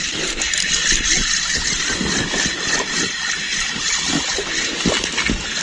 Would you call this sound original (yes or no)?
yes